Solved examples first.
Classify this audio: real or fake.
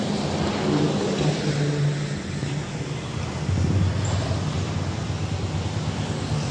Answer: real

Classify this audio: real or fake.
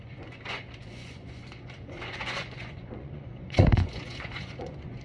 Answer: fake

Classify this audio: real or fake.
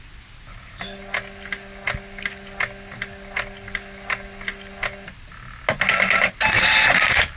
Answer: real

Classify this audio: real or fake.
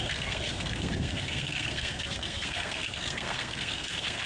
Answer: fake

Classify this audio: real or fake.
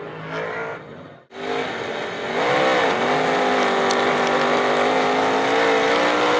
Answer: real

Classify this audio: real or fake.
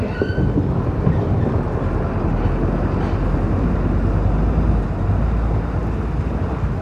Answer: real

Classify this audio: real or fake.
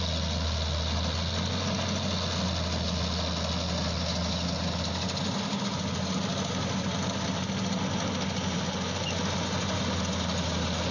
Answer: real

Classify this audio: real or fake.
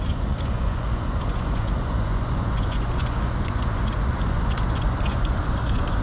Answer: fake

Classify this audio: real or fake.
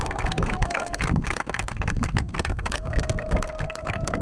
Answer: fake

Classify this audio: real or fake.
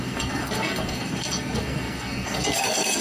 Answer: fake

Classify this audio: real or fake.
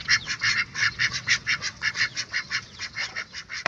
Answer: fake